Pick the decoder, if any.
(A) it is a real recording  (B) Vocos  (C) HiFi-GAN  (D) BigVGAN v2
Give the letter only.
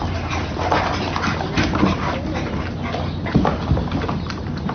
A